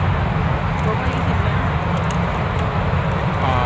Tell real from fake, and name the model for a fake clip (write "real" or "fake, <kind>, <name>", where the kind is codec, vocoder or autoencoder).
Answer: real